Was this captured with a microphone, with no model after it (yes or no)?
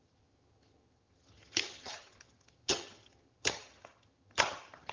no